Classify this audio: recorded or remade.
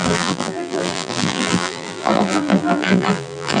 remade